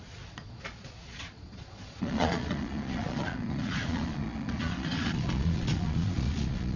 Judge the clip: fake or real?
fake